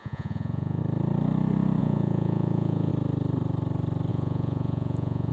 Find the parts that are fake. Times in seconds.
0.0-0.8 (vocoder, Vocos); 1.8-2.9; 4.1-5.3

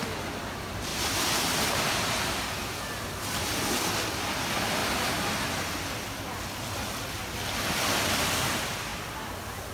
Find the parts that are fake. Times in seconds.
none

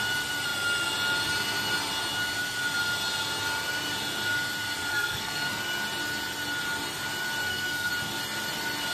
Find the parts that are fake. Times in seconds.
4.9-5.6 (codec, SNAC); 7.4-7.9